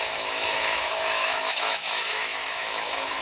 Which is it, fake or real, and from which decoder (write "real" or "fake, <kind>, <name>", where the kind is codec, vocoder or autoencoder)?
fake, autoencoder, DAC-VAE